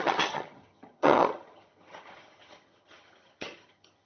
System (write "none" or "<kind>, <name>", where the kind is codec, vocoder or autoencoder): vocoder, HiFi-GAN